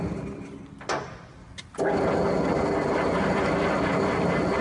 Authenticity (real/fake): real